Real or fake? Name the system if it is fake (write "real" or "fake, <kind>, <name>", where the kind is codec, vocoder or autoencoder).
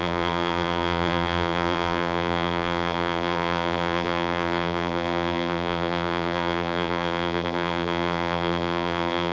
fake, vocoder, BigVGAN v2